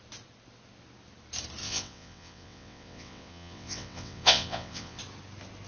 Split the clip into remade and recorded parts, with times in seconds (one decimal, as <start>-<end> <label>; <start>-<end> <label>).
0.0-1.6 recorded; 1.6-5.0 remade; 5.0-5.7 recorded